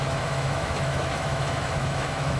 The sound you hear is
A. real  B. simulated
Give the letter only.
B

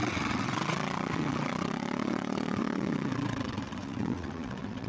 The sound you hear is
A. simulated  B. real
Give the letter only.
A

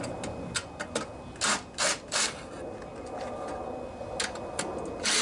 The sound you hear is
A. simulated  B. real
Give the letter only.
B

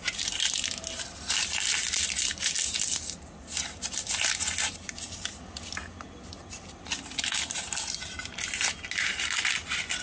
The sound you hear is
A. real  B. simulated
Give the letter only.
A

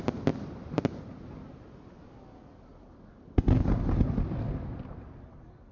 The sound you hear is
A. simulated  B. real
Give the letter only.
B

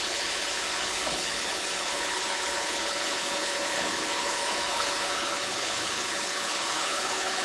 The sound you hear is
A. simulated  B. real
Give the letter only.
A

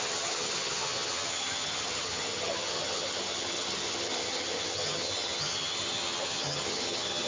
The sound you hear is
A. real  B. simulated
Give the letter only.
B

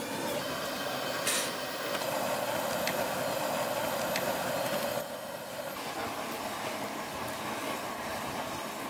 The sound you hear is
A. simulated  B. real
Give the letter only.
B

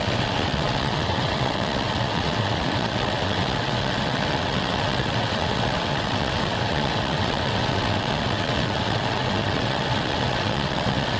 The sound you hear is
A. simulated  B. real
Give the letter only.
A